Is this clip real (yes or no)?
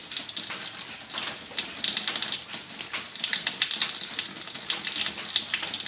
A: yes